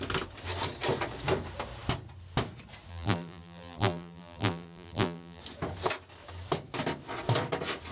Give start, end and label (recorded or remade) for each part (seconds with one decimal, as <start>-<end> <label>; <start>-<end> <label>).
0.0-2.9 recorded; 2.9-5.4 remade; 5.4-7.9 recorded